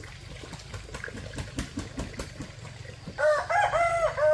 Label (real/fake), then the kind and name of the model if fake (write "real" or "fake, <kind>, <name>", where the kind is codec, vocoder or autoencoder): real